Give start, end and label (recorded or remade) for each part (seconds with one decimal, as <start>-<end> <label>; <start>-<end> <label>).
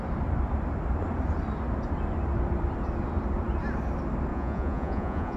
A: 0.0-4.3 recorded; 4.3-5.4 remade